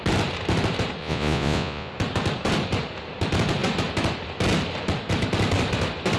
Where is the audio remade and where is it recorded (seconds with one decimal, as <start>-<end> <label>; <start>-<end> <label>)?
0.0-1.0 recorded; 1.0-1.9 remade; 1.9-6.2 recorded